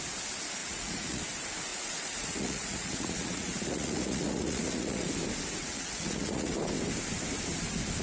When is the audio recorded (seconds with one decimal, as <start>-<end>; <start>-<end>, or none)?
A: 0.0-0.6; 1.2-1.7; 5.1-5.6; 6.5-8.0